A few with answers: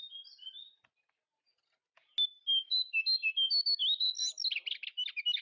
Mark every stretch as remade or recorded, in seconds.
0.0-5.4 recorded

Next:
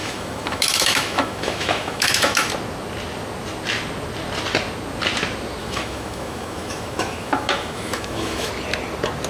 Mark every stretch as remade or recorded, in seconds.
0.0-2.5 remade; 2.5-5.6 recorded; 5.6-8.5 remade; 8.5-9.3 recorded

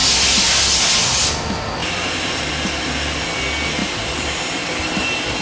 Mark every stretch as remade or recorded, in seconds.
0.0-1.8 recorded; 1.8-2.5 remade; 2.5-3.8 recorded; 3.8-5.4 remade

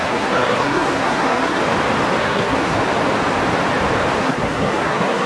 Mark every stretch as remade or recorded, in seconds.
0.0-1.6 remade; 1.6-2.2 recorded; 2.2-2.8 remade; 2.8-4.2 recorded; 4.2-5.3 remade

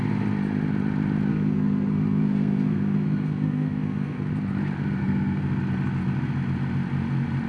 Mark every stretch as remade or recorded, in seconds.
0.0-1.3 recorded; 1.3-4.3 remade; 4.3-5.0 recorded; 5.0-5.6 remade; 5.6-7.5 recorded

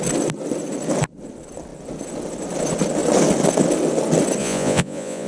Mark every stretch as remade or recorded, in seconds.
0.0-4.4 recorded; 4.4-5.3 remade

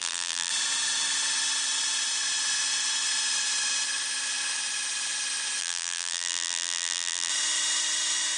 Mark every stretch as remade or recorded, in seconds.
0.0-0.5 remade; 0.5-5.6 recorded; 5.6-7.3 remade; 7.3-8.4 recorded